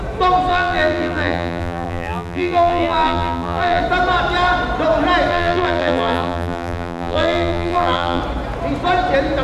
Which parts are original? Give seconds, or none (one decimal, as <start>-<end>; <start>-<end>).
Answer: 0.0-0.5; 3.8-5.3; 8.2-9.4